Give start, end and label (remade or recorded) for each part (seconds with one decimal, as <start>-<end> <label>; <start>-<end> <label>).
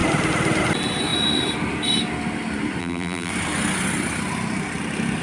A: 0.0-2.8 recorded; 2.8-3.3 remade; 3.3-5.2 recorded